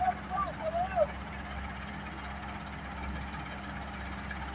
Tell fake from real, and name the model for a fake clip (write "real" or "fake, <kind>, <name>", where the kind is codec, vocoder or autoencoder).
real